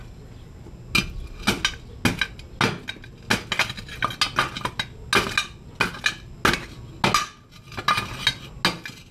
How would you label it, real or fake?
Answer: real